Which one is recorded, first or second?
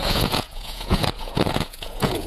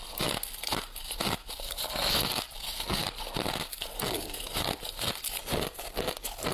second